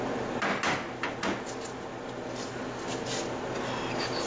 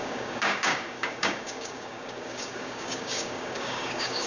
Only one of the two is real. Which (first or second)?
first